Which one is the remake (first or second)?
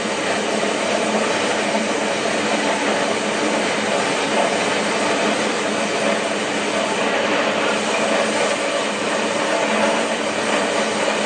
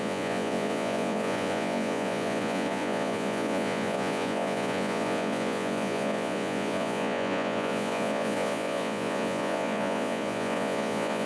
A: second